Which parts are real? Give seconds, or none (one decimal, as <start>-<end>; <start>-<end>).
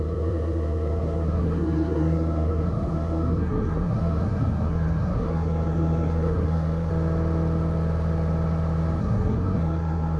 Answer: 6.9-9.0